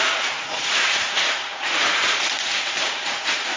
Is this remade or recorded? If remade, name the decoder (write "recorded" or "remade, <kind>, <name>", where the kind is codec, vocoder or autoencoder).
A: remade, vocoder, Vocos